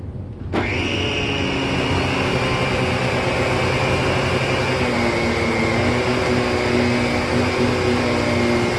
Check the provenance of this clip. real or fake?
real